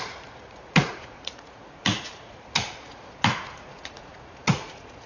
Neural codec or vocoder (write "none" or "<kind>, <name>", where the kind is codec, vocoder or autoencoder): vocoder, Vocos